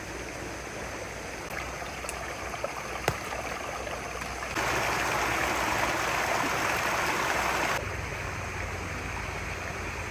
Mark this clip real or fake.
real